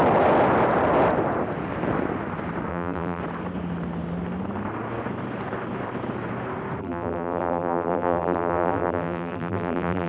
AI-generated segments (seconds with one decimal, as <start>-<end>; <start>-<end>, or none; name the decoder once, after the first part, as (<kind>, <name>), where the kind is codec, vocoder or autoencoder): 2.7-3.2 (vocoder, BigVGAN v2); 6.8-10.1